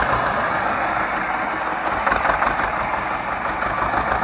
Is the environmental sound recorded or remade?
recorded